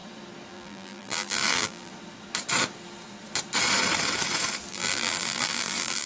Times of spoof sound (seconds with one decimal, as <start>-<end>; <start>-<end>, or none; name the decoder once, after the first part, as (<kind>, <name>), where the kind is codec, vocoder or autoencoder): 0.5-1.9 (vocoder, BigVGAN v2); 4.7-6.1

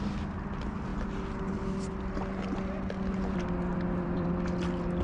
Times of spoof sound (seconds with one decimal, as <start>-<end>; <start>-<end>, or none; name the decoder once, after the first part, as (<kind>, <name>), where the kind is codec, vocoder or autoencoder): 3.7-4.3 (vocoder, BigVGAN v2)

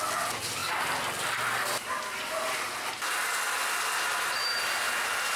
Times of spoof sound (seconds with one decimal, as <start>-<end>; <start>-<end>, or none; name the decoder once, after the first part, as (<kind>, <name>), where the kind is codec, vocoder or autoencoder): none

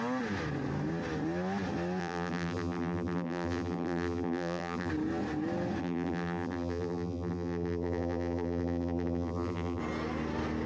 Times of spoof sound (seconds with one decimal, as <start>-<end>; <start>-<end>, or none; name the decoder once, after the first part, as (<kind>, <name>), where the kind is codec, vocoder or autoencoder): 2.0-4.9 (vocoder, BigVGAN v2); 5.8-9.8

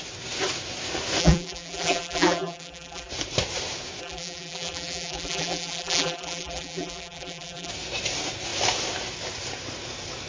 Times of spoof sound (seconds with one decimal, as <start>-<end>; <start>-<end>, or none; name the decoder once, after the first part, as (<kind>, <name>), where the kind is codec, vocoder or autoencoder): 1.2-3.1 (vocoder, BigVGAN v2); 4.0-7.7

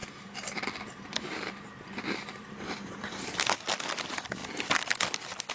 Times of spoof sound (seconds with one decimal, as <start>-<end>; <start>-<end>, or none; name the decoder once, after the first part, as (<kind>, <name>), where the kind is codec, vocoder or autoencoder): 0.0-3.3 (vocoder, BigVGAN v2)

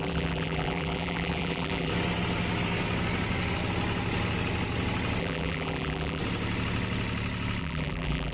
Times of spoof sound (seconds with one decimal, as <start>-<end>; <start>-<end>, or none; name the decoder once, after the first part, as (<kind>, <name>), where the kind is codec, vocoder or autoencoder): 0.0-1.9 (vocoder, BigVGAN v2); 5.2-6.2; 7.6-8.3